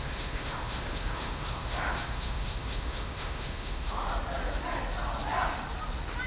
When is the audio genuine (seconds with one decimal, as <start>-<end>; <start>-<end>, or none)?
4.1-6.3